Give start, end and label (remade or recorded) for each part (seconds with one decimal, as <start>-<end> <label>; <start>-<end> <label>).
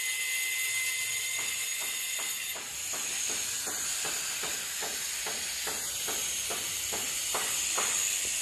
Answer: 0.0-8.4 recorded